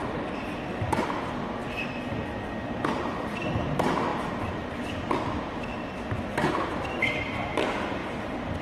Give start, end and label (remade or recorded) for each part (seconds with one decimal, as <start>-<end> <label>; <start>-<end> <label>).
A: 0.0-4.1 remade; 4.1-6.2 recorded; 6.2-8.6 remade